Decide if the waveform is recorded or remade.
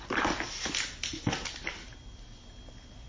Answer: recorded